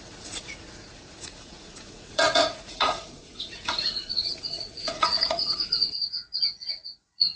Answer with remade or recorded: remade